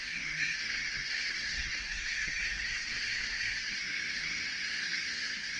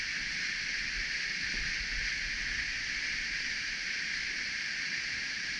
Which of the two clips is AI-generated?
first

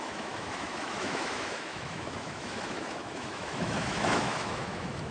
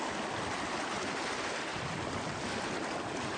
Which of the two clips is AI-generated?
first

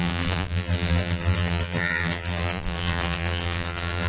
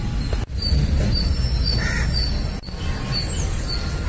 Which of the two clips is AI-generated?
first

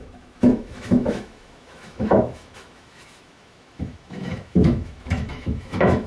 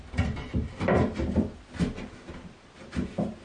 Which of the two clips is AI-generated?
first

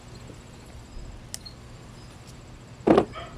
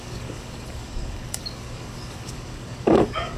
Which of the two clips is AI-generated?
second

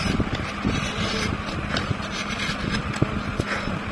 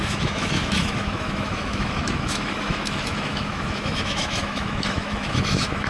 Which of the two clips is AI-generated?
second